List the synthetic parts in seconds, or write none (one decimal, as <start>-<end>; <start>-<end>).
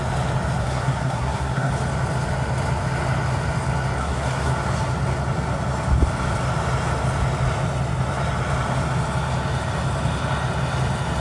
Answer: 0.6-1.7; 4.0-4.5